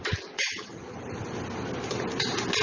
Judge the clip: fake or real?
real